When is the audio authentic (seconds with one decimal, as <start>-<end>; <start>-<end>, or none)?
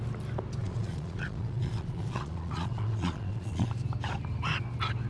0.0-0.6; 3.7-5.1